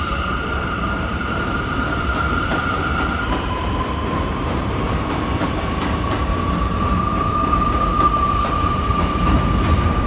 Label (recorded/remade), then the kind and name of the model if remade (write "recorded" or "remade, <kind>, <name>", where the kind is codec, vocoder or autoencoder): remade, vocoder, BigVGAN v2